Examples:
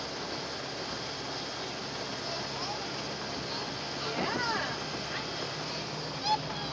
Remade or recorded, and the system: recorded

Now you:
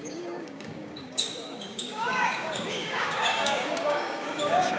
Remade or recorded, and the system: remade, codec, DAC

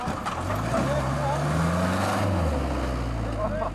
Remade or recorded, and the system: recorded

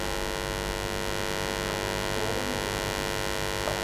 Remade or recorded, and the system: recorded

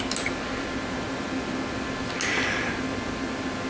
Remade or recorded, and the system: recorded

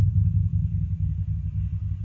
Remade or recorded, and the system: recorded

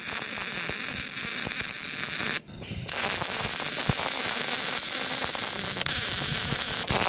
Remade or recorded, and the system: recorded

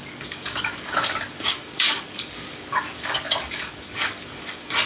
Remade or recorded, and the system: remade, codec, DAC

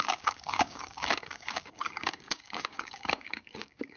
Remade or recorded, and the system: remade, codec, DAC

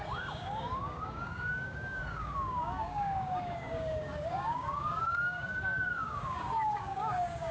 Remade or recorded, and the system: remade, codec, DAC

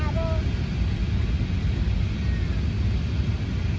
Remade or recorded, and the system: recorded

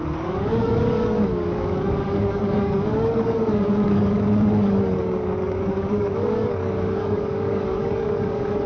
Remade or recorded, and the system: remade, codec, DAC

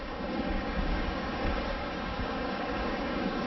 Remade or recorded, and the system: remade, codec, DAC